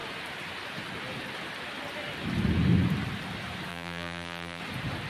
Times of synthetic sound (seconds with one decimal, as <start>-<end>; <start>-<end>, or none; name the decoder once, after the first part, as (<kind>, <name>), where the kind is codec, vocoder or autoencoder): 3.7-4.6 (vocoder, BigVGAN v2)